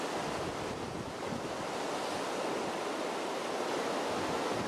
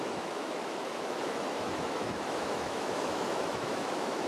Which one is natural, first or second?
first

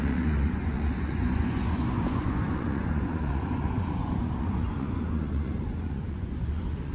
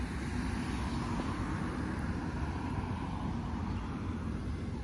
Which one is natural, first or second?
second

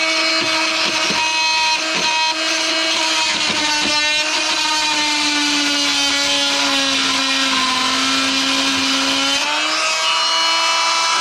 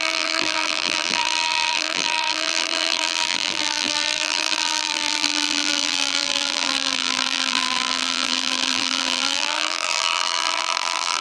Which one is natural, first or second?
first